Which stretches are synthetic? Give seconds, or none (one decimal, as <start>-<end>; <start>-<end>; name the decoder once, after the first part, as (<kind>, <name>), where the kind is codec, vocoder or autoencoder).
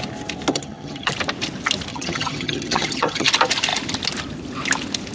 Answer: 0.5-1.1 (vocoder, HiFi-GAN); 1.9-3.3